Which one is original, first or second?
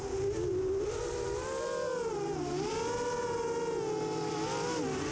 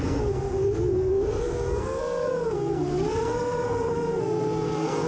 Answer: first